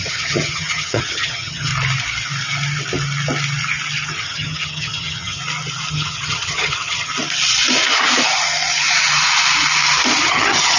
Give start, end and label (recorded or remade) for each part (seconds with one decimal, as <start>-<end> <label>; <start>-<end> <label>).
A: 0.0-1.7 remade; 1.7-4.1 recorded; 4.1-5.4 remade; 5.4-5.9 recorded; 5.9-7.1 remade; 7.1-10.2 recorded; 10.2-10.8 remade